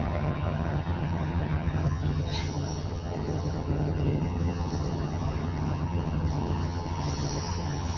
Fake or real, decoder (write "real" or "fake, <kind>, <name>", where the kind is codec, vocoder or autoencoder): fake, vocoder, HiFi-GAN